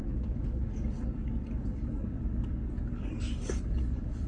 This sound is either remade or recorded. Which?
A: remade